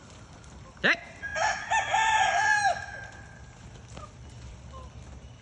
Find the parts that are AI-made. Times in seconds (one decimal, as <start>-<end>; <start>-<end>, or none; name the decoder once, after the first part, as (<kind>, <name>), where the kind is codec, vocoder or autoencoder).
none

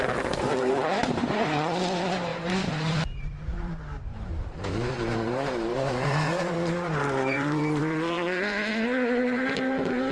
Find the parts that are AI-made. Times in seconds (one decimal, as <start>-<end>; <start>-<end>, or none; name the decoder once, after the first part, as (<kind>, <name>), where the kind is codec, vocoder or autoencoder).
0.0-10.1 (vocoder, BigVGAN v2)

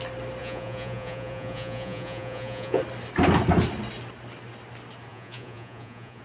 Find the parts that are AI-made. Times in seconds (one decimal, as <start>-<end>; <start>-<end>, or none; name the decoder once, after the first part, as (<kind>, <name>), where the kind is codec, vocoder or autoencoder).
0.4-2.8 (vocoder, Vocos); 5.1-6.2

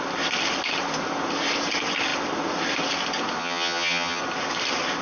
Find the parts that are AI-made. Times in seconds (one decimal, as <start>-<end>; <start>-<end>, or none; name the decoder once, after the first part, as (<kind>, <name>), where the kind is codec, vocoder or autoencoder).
3.4-4.2 (vocoder, HiFi-GAN)

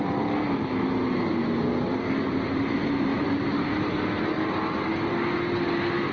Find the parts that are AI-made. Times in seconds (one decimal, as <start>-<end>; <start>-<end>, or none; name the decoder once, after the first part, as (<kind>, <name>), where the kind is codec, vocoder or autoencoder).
3.1-3.9 (vocoder, BigVGAN v2)

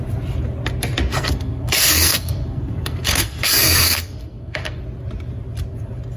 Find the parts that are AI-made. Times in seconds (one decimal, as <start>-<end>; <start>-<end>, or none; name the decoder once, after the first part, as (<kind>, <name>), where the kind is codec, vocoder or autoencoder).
1.1-4.8 (codec, SNAC)